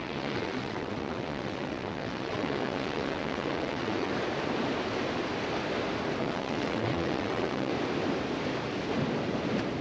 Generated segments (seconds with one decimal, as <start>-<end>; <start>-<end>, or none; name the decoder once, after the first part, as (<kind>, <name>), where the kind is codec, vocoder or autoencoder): 0.0-4.1 (vocoder, WaveNeXt); 6.2-7.7